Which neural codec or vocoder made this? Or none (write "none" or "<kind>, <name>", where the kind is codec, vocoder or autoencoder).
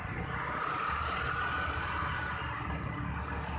none